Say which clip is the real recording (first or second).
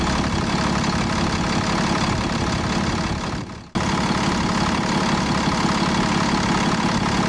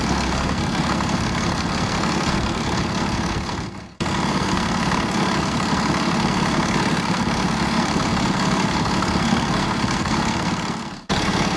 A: first